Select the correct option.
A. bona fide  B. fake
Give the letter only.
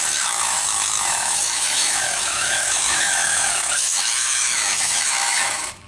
B